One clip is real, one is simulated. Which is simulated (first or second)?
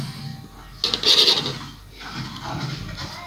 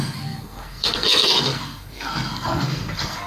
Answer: second